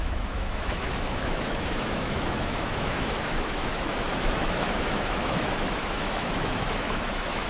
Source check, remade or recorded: remade